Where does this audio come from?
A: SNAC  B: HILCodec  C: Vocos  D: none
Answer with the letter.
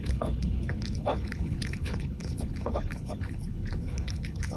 B